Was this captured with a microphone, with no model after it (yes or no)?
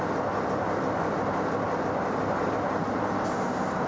yes